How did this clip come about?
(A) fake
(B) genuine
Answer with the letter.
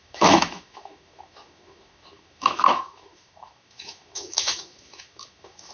A